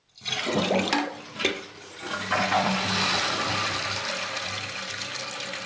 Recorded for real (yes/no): yes